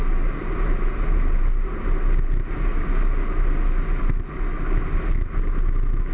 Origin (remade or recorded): recorded